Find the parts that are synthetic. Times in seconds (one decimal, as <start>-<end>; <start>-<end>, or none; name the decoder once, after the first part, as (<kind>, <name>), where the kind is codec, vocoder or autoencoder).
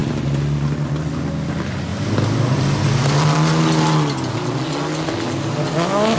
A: none